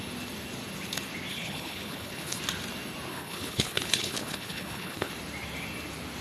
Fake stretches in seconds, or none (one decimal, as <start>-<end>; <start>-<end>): 1.3-2.4; 3.1-5.1